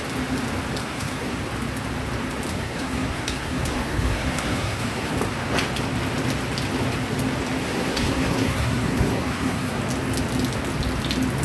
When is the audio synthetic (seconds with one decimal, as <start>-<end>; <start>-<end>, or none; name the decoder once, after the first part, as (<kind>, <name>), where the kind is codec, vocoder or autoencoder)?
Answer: 0.8-1.4 (codec, SNAC); 2.5-5.1; 7.6-9.8

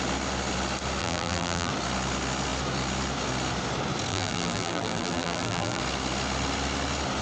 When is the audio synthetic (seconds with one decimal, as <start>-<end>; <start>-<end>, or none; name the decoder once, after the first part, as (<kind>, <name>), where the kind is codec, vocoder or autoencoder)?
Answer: 1.0-1.7 (vocoder, BigVGAN v2); 4.1-5.8

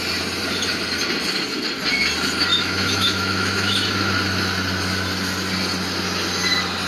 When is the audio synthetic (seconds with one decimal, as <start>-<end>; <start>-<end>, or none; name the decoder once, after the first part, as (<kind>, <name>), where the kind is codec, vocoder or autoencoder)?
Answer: 2.5-3.9 (autoencoder, DAC-VAE)

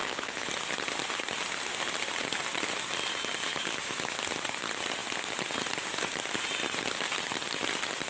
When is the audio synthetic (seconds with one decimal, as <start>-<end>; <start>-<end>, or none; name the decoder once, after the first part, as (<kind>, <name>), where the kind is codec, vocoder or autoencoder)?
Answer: 0.0-0.5 (autoencoder, DAC-VAE); 3.5-4.2

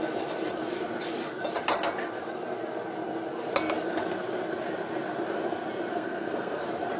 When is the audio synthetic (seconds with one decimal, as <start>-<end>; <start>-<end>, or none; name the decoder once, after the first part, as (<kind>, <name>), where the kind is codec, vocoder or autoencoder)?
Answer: 5.9-6.6 (codec, SNAC)

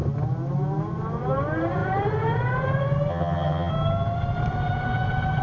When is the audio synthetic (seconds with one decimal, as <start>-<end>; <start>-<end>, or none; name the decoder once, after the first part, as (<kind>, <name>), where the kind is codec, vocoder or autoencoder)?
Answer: 3.1-3.7 (vocoder, HiFi-GAN)